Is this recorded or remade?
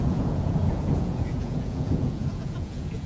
remade